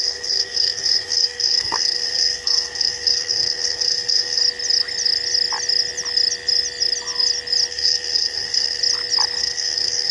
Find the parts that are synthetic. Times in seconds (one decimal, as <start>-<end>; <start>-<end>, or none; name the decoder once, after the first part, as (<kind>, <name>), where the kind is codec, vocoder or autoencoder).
0.0-4.4 (codec, SNAC); 7.7-8.8; 9.4-10.1